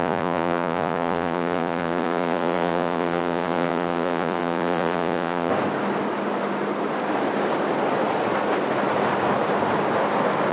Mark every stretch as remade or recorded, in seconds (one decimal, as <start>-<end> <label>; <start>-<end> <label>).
0.0-5.5 remade; 5.5-10.5 recorded